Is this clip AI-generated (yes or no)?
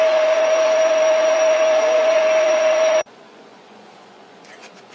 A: yes